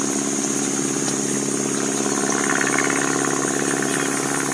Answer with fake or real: real